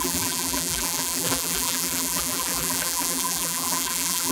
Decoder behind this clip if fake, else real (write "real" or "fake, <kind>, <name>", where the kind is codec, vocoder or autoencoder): fake, vocoder, BigVGAN v2